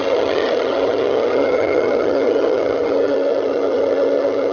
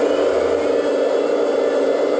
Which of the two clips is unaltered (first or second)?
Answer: second